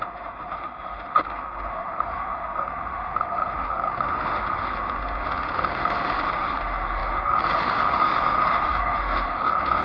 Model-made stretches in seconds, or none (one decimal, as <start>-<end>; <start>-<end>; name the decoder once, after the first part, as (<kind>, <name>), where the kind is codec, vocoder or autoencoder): 0.0-9.8 (autoencoder, DAC-VAE)